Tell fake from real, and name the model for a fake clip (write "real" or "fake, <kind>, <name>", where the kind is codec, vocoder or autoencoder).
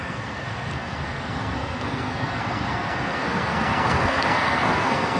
fake, codec, SNAC